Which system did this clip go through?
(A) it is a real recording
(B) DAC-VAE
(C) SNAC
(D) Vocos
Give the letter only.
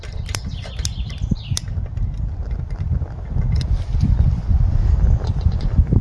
A